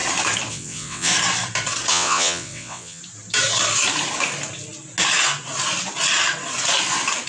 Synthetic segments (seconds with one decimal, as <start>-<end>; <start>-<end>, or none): 0.5-1.1; 1.9-3.0